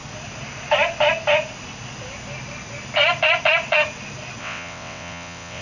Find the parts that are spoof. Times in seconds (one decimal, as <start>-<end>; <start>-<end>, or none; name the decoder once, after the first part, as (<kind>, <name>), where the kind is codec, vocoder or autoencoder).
4.4-5.6 (vocoder, WaveNeXt)